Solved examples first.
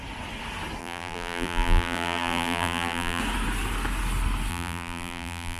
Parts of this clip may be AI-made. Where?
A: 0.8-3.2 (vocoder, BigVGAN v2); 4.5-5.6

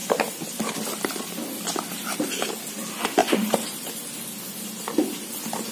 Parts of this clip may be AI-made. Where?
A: 3.2-3.9 (vocoder, BigVGAN v2)

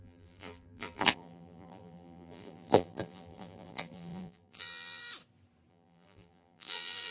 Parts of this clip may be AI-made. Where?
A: 0.0-5.0 (vocoder, BigVGAN v2); 5.7-7.1

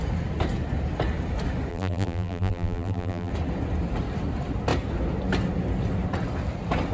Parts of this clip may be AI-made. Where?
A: 1.7-3.3 (vocoder, BigVGAN v2)

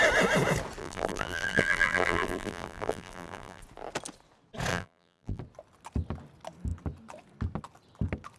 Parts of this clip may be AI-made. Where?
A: 0.8-3.6 (vocoder, BigVGAN v2); 4.7-5.4

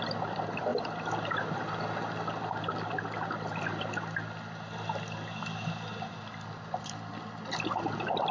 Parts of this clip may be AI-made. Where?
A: none

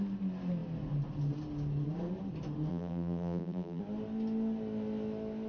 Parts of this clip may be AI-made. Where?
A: 2.7-3.8 (vocoder, BigVGAN v2)

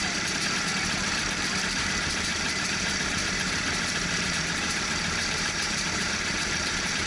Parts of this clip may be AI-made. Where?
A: 1.8-7.1 (vocoder, BigVGAN v2)